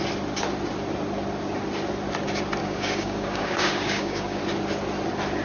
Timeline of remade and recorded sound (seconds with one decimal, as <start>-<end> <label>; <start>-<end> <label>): 0.0-2.6 recorded; 2.6-4.4 remade; 4.4-5.4 recorded